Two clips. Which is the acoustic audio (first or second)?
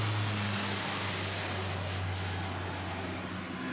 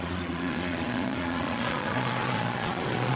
first